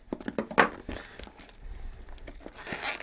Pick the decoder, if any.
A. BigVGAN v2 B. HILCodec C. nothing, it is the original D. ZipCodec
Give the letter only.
C